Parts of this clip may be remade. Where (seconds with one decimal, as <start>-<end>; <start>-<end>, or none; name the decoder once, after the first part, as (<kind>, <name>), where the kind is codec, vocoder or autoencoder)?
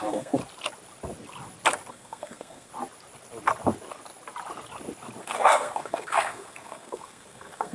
0.0-0.4 (codec, SNAC); 1.9-2.7; 5.2-7.7